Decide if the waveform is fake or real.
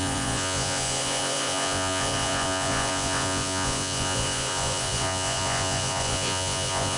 fake